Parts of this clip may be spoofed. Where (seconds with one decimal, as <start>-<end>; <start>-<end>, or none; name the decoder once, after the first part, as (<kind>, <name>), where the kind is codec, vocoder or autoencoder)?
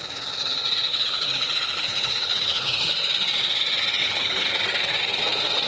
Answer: 0.9-2.9 (codec, HILCodec); 4.0-4.5